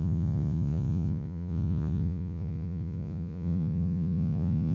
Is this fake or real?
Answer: fake